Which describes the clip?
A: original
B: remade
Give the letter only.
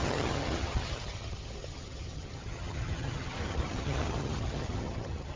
B